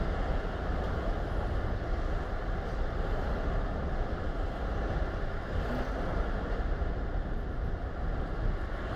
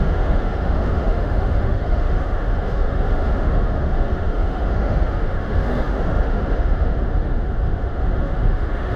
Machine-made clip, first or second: second